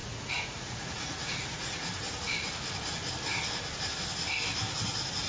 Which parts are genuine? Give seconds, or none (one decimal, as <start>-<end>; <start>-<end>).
1.9-5.3